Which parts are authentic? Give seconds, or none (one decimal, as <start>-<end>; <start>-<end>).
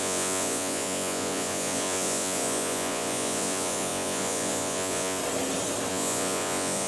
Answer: 5.2-5.9